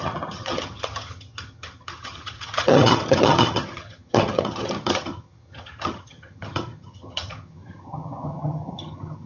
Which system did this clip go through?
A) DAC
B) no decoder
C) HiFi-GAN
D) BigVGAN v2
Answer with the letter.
C